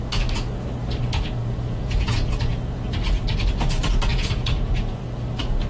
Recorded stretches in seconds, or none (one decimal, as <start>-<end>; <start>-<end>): 0.0-1.4; 2.7-4.1; 5.0-5.7